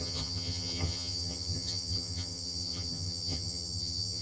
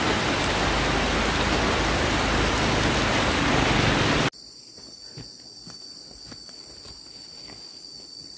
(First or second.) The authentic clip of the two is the second